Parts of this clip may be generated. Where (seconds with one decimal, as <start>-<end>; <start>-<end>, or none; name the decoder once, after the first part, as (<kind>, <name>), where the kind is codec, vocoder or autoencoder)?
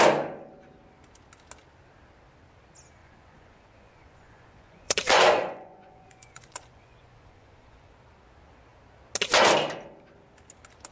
3.0-7.9 (vocoder, Vocos)